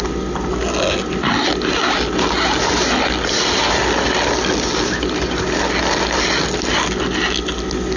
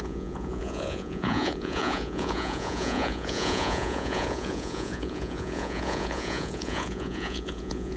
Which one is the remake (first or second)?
second